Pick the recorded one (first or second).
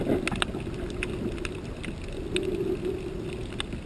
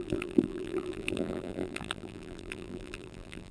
first